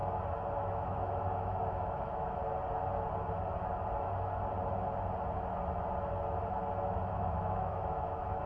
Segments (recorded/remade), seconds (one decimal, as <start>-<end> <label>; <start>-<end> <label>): 0.0-0.6 recorded; 0.6-2.4 remade; 2.4-6.9 recorded; 6.9-8.5 remade